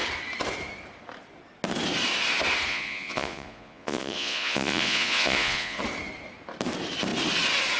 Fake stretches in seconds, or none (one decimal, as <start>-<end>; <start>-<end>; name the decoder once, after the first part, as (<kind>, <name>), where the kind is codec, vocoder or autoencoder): 2.7-5.8 (vocoder, Vocos)